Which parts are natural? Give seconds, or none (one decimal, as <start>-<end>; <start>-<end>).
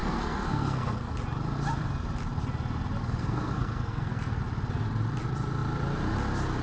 1.1-3.0; 4.4-6.6